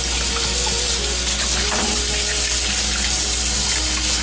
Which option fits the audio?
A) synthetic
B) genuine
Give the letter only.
B